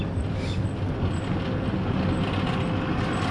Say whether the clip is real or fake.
real